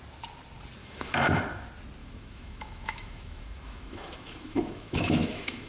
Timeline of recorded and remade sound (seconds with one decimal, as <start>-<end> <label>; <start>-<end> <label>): 0.0-0.8 recorded; 0.8-1.4 remade; 1.4-2.0 recorded; 2.0-5.7 remade